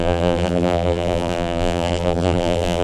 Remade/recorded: remade